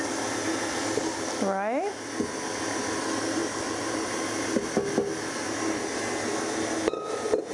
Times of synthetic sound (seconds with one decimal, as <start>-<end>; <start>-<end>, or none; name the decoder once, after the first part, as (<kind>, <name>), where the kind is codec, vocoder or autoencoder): 3.4-4.1 (vocoder, BigVGAN v2)